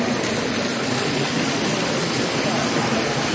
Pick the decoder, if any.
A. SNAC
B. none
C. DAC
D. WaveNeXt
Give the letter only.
B